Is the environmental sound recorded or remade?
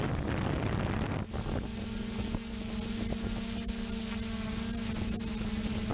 recorded